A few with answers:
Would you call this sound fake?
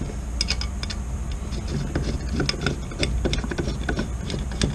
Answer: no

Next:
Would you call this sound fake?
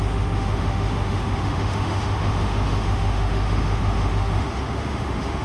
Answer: yes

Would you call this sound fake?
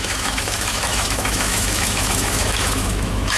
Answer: yes